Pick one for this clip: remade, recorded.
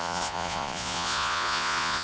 remade